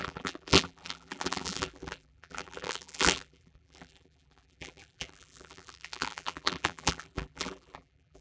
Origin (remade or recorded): remade